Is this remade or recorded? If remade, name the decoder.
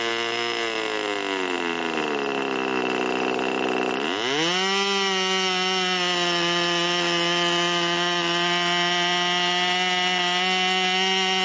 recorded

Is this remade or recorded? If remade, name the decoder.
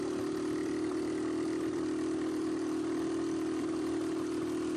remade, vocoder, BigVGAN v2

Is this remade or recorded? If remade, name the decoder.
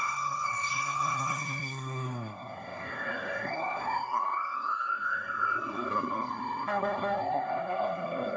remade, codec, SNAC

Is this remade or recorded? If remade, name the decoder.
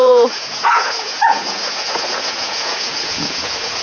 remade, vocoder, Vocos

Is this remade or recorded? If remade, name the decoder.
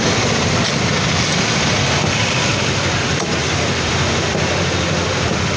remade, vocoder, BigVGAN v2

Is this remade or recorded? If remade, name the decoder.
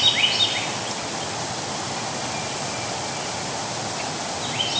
recorded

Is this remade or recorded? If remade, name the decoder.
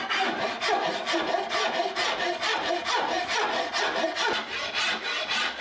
recorded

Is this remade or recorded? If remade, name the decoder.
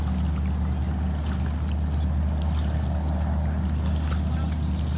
recorded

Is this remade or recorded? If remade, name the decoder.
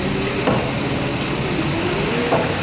recorded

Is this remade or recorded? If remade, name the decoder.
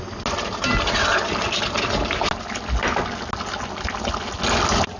recorded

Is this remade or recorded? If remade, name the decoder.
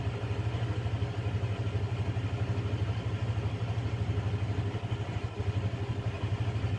recorded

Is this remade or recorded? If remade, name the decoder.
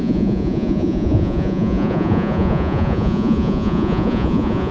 remade, vocoder, Vocos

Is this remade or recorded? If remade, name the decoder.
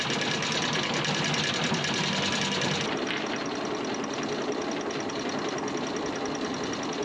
recorded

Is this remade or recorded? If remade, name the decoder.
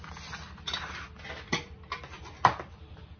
recorded